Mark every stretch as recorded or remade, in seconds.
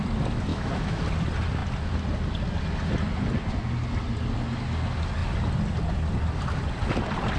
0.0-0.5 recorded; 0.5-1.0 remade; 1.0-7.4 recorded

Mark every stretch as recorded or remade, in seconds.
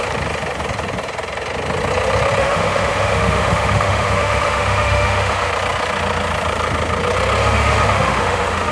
0.0-2.4 recorded; 2.4-5.5 remade; 5.5-7.4 recorded; 7.4-8.7 remade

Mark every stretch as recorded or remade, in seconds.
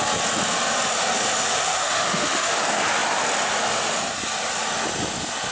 0.0-1.5 recorded; 1.5-2.6 remade; 2.6-5.5 recorded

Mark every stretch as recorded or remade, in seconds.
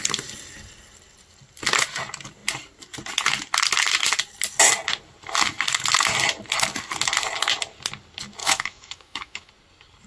0.0-8.4 recorded; 8.4-9.5 remade; 9.5-10.1 recorded